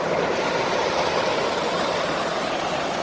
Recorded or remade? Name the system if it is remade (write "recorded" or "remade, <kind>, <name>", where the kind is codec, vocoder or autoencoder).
recorded